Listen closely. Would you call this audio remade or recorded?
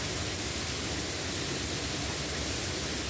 recorded